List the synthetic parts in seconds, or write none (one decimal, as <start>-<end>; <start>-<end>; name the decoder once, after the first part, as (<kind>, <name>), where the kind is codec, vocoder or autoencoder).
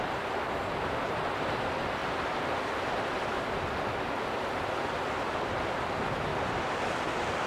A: none